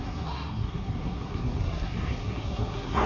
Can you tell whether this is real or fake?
fake